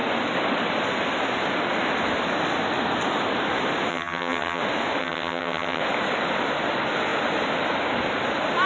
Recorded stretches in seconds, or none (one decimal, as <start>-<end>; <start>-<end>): 0.0-3.9; 4.6-5.0; 5.8-8.7